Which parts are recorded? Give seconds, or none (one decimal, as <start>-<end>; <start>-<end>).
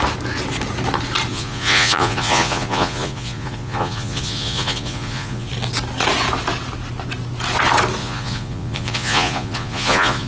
0.0-1.3; 5.5-8.0